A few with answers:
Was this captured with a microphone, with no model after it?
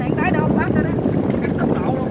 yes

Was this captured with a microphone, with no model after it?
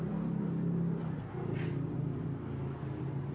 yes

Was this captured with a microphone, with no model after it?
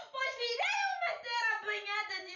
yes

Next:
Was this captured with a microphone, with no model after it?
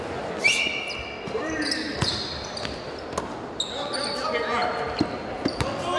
yes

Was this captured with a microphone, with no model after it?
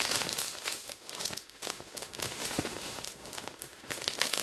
no